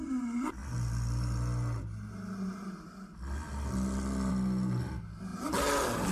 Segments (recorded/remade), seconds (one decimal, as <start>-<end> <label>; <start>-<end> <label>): 0.0-6.1 recorded